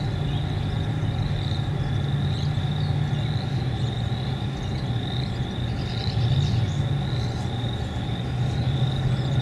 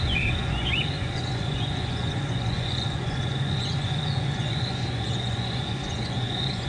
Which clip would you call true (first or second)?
first